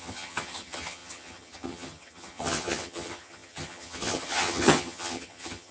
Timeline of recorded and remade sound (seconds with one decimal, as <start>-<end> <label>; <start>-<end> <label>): 0.0-5.7 remade